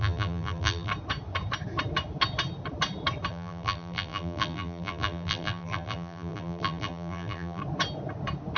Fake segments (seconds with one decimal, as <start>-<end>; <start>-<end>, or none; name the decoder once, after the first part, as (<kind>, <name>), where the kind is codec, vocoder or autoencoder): 0.0-0.9 (vocoder, BigVGAN v2); 3.3-7.6